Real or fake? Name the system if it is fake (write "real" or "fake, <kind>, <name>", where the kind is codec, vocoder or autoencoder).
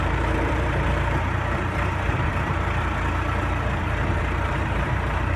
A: fake, vocoder, BigVGAN v2